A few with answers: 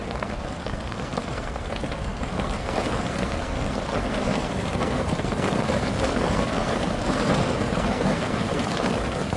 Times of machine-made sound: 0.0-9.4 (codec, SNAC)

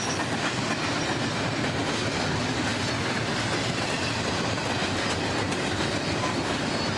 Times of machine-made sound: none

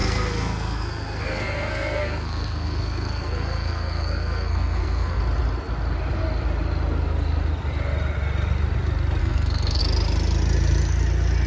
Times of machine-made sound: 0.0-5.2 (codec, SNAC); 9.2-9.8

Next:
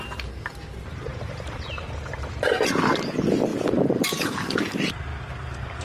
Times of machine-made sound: 1.1-3.1 (vocoder, BigVGAN v2); 3.5-4.5